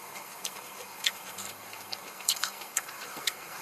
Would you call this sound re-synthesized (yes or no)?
yes